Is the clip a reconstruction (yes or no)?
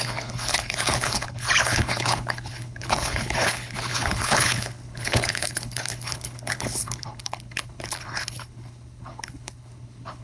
yes